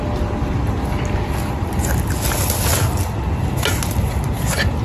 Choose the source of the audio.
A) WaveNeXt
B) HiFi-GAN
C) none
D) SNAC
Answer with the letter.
C